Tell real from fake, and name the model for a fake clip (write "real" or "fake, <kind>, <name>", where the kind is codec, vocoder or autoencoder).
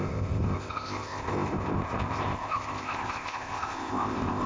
fake, codec, ZipCodec